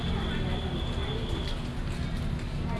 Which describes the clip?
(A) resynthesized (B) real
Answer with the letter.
B